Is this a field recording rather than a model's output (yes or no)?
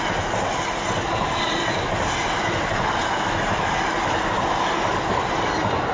yes